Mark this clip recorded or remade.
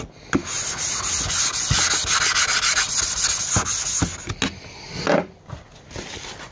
recorded